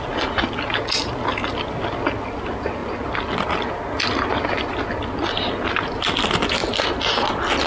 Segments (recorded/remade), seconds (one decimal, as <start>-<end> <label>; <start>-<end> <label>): 0.0-7.7 recorded